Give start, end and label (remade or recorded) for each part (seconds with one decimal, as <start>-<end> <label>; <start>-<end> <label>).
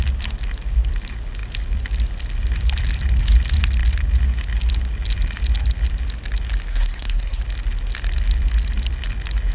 0.0-6.7 recorded; 6.7-7.4 remade; 7.4-9.5 recorded